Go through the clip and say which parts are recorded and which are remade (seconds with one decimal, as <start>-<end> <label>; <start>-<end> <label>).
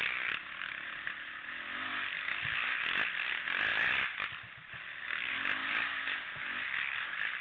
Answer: 0.0-1.9 remade; 1.9-2.4 recorded; 2.4-7.4 remade